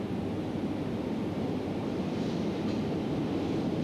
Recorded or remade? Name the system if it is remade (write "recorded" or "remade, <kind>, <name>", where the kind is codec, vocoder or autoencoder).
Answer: recorded